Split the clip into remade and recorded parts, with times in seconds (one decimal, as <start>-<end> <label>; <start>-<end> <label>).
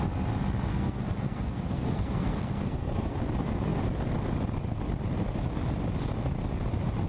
0.0-0.7 recorded; 0.7-3.2 remade; 3.2-7.1 recorded